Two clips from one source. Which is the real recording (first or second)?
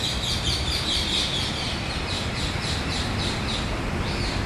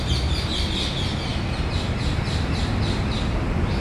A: second